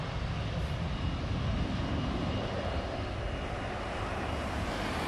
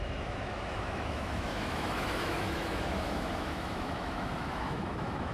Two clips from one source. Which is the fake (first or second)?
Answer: second